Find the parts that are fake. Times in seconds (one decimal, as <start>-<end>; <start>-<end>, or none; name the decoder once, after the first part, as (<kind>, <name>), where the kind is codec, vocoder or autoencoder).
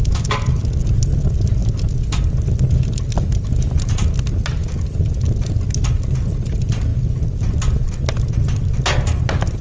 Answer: none